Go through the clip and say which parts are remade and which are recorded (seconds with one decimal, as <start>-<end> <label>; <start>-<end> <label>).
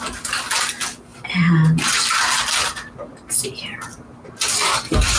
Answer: 0.0-5.2 recorded